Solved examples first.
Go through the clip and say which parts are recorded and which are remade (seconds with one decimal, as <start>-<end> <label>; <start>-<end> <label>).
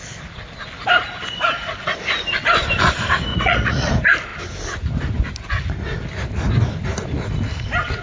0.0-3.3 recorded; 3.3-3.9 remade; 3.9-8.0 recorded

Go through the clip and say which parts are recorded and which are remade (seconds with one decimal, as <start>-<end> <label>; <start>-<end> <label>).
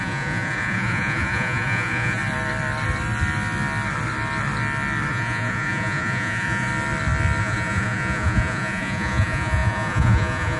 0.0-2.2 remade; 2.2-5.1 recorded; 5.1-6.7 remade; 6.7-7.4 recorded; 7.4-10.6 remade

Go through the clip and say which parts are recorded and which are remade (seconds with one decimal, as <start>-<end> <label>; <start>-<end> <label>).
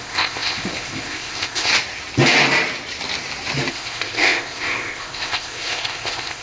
0.0-1.7 remade; 1.7-3.7 recorded; 3.7-6.4 remade